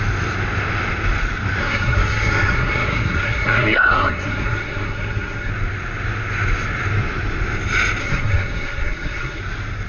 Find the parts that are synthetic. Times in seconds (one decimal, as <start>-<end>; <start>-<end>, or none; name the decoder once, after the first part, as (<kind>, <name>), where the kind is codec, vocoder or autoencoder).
1.6-5.5 (codec, SNAC); 8.0-9.4